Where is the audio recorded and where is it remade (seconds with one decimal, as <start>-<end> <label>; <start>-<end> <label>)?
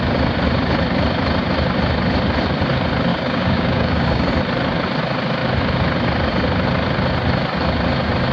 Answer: 0.0-3.1 recorded; 3.1-4.3 remade; 4.3-8.3 recorded